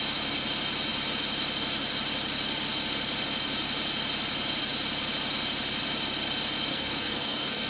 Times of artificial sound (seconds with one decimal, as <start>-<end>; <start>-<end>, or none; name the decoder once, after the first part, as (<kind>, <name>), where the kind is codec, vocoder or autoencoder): 6.7-7.7 (codec, SNAC)